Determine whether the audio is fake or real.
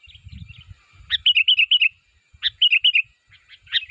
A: real